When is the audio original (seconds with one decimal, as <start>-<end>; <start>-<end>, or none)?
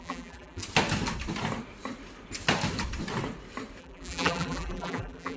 0.6-3.8